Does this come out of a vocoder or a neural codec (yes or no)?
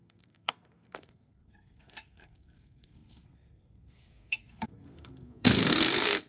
yes